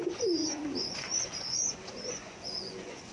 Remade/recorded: remade